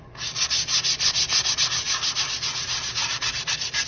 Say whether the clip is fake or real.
real